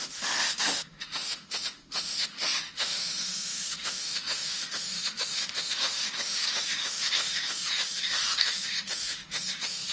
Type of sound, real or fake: fake